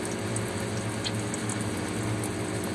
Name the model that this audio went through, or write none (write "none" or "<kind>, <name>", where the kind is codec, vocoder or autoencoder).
none